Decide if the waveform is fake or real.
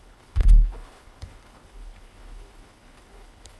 fake